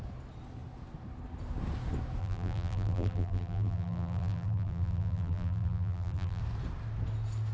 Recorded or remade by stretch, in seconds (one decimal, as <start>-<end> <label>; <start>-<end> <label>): 0.0-2.2 recorded; 2.2-6.4 remade; 6.4-7.5 recorded